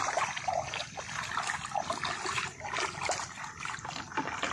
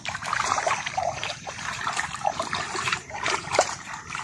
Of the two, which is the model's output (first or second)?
second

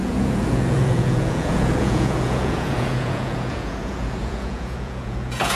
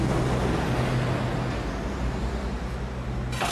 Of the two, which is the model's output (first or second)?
first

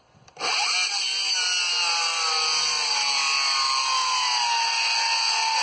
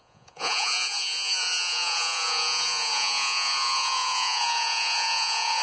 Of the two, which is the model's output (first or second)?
second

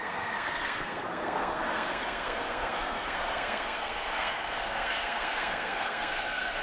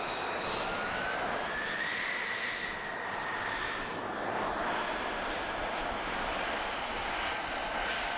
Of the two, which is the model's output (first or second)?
first